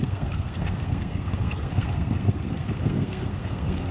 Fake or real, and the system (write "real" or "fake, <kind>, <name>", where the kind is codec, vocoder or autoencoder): fake, codec, SNAC